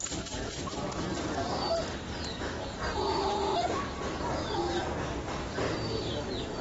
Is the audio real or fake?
real